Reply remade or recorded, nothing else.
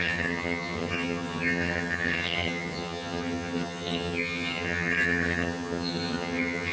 remade